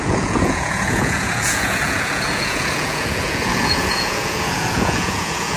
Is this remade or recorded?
remade